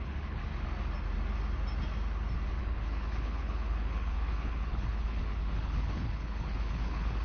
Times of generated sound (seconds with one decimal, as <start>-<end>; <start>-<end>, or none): 0.0-0.4; 2.6-7.2